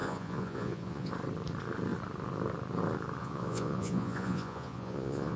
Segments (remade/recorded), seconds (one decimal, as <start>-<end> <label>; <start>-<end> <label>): 0.0-1.1 remade; 1.1-3.2 recorded; 3.2-5.4 remade